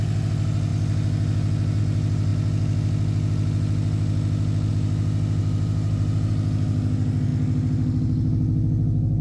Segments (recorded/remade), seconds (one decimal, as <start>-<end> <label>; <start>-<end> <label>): 0.0-5.4 recorded; 5.4-6.3 remade; 6.3-9.2 recorded